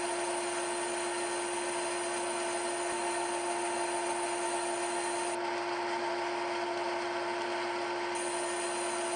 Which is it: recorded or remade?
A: recorded